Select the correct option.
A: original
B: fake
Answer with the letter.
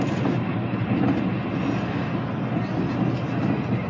A